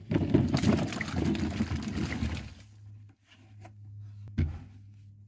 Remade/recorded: recorded